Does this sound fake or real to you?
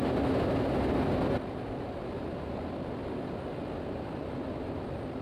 real